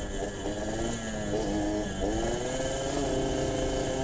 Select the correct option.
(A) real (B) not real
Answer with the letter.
A